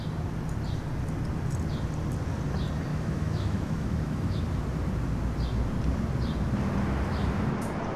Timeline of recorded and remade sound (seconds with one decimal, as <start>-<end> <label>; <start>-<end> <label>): 0.0-2.9 recorded; 2.9-4.4 remade; 4.4-8.0 recorded